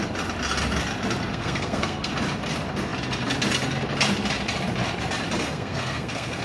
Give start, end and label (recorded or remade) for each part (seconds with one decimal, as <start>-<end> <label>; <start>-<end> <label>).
0.0-1.3 recorded; 1.3-2.1 remade; 2.1-5.4 recorded; 5.4-6.4 remade